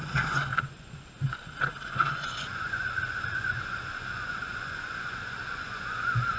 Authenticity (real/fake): fake